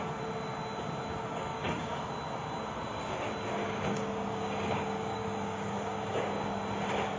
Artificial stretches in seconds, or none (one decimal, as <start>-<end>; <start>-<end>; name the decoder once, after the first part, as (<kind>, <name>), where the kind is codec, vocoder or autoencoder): 1.5-2.1 (codec, DAC); 3.6-6.3